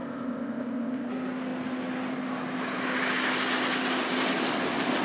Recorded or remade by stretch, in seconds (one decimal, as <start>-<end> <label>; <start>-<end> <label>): 0.0-1.1 remade; 1.1-5.0 recorded